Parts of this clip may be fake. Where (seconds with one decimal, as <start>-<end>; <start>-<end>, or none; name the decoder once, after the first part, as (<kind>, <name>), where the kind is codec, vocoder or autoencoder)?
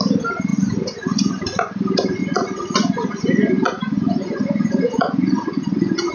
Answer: 0.5-1.3 (vocoder, Vocos); 2.2-6.1